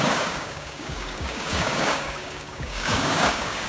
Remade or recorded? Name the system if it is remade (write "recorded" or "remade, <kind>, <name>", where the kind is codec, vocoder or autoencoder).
remade, codec, DAC